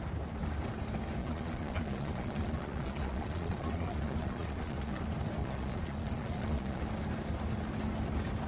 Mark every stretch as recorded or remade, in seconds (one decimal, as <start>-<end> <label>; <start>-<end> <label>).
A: 0.0-1.2 recorded; 1.2-5.0 remade; 5.0-5.4 recorded; 5.4-6.8 remade; 6.8-8.5 recorded